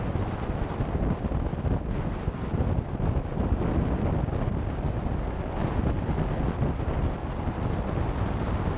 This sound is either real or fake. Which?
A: real